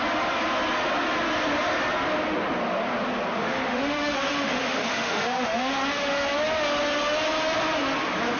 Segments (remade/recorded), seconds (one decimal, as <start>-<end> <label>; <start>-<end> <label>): 0.0-3.3 recorded; 3.3-5.7 remade; 5.7-8.4 recorded